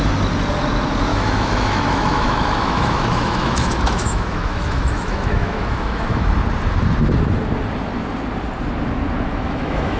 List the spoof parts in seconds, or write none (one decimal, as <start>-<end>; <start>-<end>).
1.1-6.3; 9.3-10.0